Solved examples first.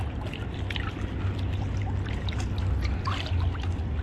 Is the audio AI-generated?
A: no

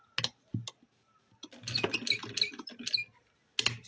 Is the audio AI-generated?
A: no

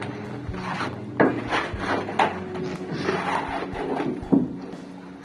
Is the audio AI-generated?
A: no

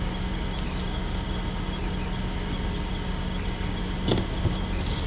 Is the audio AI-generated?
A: no